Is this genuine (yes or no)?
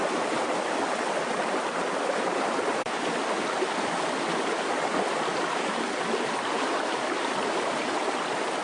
yes